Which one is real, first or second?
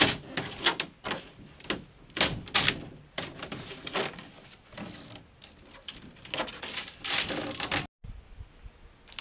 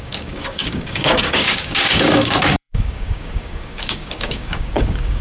first